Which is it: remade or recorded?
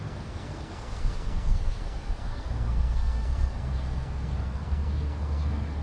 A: remade